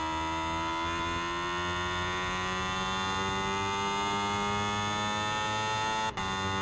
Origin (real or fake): real